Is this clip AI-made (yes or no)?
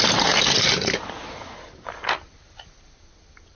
no